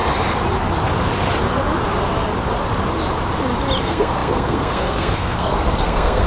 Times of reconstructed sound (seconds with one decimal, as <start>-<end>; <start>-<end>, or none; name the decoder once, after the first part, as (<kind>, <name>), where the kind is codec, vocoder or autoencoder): 3.8-6.3 (codec, SNAC)